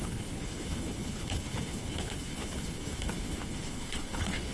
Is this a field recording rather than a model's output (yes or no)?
no